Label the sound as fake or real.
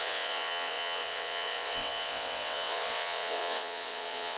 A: fake